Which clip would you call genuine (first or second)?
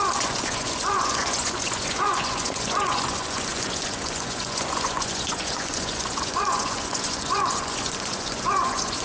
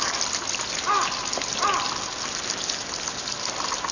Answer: second